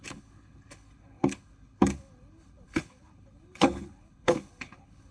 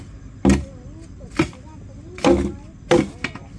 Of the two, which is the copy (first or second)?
first